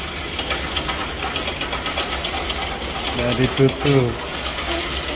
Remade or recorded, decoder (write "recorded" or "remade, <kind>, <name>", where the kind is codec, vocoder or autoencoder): recorded